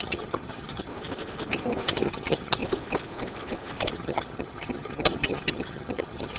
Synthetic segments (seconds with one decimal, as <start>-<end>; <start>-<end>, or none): 0.0-0.9; 1.9-2.6; 3.9-6.4